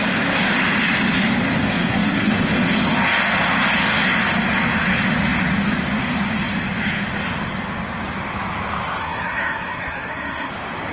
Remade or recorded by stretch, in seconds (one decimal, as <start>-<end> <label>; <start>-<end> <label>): 0.0-1.7 recorded; 1.7-2.4 remade; 2.4-9.0 recorded; 9.0-10.5 remade; 10.5-10.9 recorded